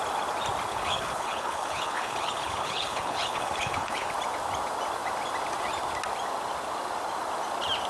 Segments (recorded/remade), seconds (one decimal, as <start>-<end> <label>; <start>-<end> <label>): 0.0-0.7 recorded; 0.7-4.1 remade; 4.1-7.9 recorded